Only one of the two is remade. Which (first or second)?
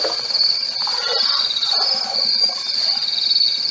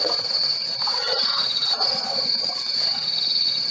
second